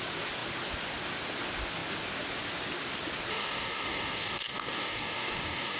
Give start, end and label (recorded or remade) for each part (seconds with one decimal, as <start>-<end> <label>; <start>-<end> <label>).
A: 0.0-3.3 recorded; 3.3-5.8 remade